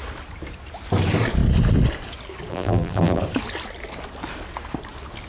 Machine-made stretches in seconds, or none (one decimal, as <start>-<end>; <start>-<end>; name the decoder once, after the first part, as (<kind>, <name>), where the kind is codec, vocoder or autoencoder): 2.5-3.2 (vocoder, BigVGAN v2)